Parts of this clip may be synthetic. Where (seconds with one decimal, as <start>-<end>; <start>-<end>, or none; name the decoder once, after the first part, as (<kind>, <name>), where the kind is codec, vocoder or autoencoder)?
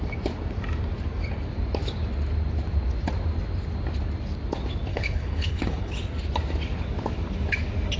4.9-5.9 (codec, HILCodec)